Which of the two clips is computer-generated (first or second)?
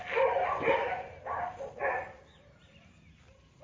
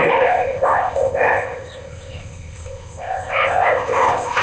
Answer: second